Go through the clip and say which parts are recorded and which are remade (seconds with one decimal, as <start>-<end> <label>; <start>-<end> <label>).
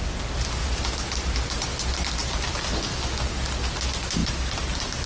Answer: 0.0-2.2 recorded; 2.2-2.9 remade; 2.9-4.2 recorded; 4.2-5.1 remade